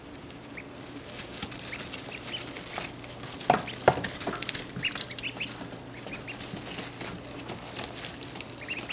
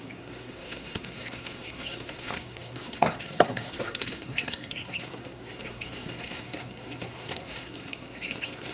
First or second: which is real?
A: first